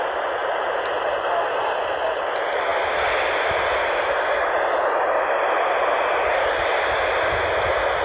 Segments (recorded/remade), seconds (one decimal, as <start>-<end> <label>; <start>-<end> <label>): 0.0-8.0 recorded